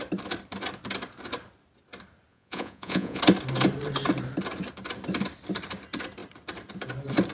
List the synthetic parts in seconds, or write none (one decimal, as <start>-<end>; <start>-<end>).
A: 2.3-3.2